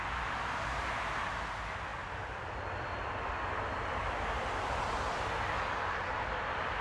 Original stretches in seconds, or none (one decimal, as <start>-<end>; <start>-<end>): 0.0-6.8